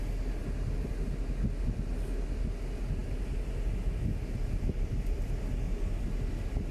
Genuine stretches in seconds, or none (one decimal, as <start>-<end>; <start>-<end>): 0.0-6.7